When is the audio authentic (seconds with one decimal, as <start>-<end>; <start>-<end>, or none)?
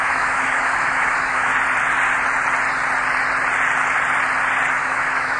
1.5-4.7